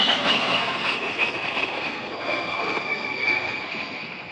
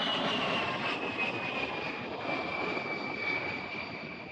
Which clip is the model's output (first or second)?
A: first